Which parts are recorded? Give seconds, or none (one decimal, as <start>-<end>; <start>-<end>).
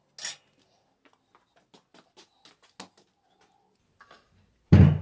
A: 0.0-5.0